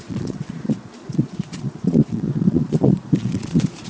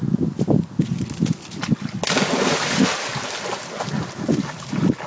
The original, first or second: second